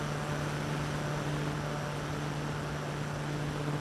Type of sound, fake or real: real